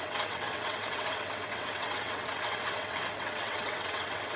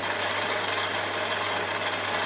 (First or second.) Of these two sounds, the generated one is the first